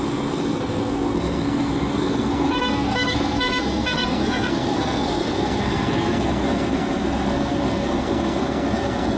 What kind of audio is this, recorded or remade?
remade